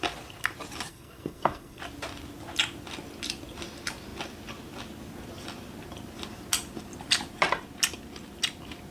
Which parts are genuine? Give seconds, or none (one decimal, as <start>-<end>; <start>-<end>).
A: 0.0-0.9; 1.8-8.9